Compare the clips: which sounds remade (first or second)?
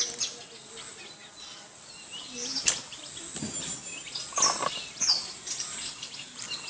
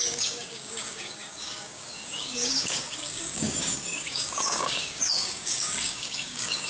second